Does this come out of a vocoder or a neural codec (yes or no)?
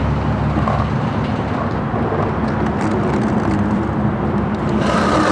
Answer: no